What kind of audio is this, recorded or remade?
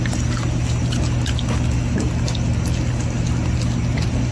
recorded